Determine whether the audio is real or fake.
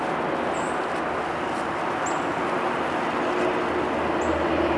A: real